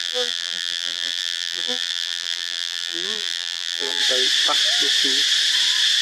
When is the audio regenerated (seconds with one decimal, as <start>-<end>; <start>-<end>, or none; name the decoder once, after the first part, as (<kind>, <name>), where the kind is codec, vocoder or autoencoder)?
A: 0.0-4.0 (vocoder, BigVGAN v2)